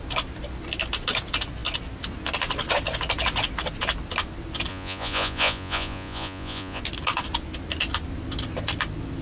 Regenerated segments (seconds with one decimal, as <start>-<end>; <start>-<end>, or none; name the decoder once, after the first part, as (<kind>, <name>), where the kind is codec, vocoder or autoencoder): 4.7-6.8 (vocoder, Vocos)